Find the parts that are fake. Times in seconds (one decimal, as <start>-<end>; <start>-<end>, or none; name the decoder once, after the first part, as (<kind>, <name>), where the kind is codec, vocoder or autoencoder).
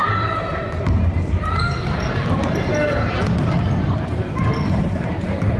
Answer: none